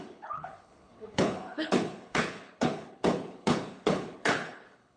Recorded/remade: remade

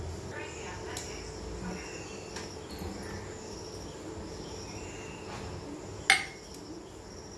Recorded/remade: recorded